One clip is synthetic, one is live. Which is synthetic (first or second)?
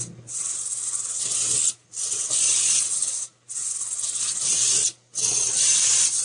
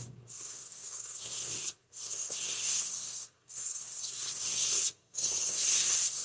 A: second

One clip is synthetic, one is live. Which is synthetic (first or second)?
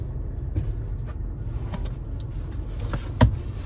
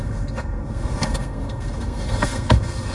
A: second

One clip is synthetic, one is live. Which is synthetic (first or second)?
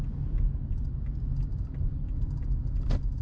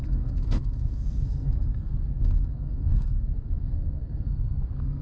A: second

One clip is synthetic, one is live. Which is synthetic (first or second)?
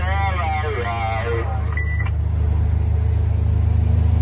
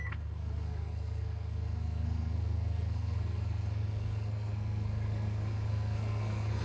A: second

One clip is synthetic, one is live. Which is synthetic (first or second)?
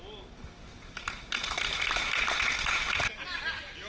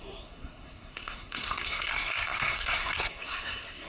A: second